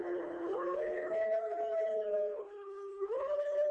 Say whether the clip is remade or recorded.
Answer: remade